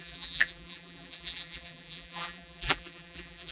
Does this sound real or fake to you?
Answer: fake